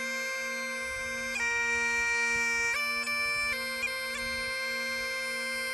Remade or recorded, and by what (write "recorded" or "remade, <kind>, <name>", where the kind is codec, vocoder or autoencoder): recorded